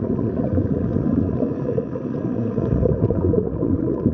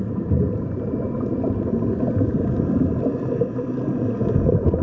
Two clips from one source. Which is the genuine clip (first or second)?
second